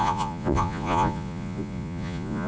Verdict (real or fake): fake